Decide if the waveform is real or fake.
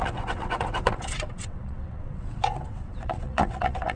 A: fake